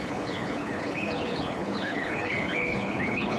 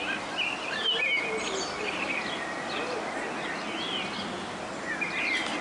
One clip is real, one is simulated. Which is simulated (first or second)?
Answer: first